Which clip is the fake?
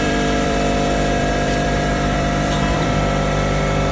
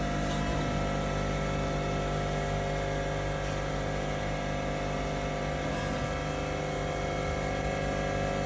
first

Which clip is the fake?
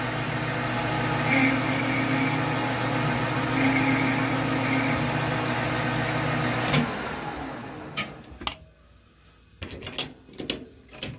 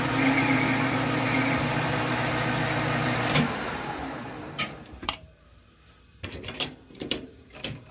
second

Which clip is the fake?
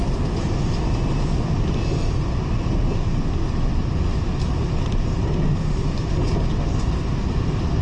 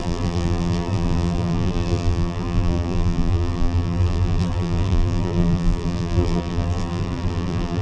second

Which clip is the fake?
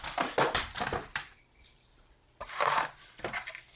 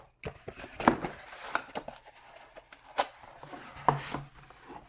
first